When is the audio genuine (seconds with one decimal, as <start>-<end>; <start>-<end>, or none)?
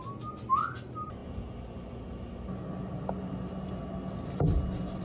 0.0-5.0